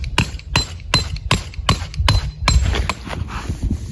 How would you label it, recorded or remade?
recorded